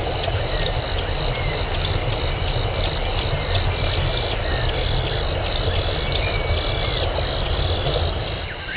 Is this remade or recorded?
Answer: recorded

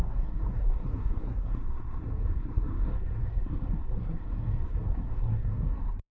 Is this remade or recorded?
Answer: remade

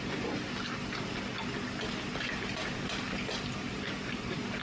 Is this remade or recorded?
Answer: recorded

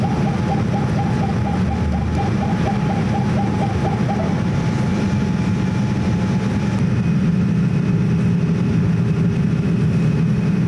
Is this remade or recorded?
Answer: recorded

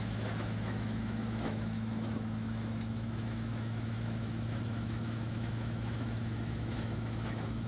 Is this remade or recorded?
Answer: remade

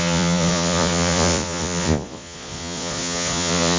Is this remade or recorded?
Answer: remade